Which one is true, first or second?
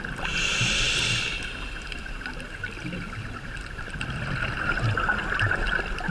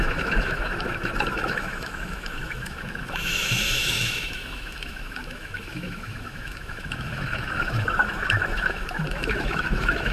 first